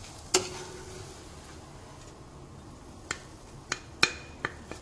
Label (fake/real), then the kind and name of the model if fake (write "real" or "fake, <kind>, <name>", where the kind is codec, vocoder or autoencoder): real